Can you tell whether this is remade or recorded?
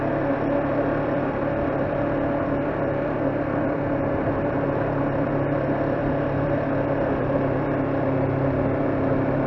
remade